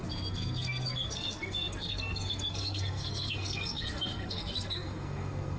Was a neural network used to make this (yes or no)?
yes